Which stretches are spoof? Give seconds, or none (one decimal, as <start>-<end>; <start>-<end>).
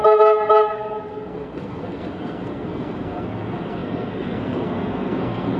0.7-5.6